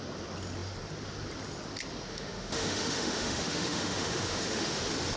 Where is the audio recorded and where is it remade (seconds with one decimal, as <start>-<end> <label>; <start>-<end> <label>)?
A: 0.0-2.1 recorded; 2.1-4.8 remade; 4.8-5.2 recorded